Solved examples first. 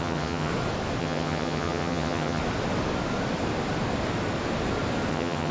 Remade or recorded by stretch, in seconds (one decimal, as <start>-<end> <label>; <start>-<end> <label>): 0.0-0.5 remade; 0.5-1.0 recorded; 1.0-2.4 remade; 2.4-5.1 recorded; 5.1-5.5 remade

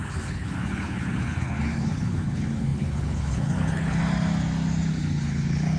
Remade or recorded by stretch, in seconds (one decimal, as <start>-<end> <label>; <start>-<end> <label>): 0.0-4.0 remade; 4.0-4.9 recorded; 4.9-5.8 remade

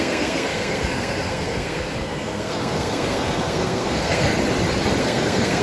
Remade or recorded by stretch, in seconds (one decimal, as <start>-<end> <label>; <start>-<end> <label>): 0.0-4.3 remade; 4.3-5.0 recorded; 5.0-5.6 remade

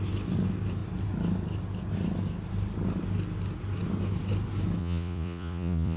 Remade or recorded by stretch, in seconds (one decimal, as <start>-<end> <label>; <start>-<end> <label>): 0.0-4.8 recorded; 4.8-6.0 remade

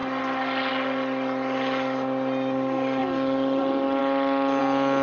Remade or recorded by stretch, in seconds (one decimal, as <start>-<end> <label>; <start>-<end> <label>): 0.0-5.0 recorded

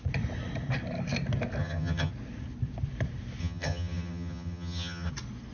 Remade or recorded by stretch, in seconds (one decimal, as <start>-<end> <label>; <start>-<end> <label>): 0.0-1.6 recorded; 1.6-2.1 remade; 2.1-3.4 recorded; 3.4-5.1 remade; 5.1-5.5 recorded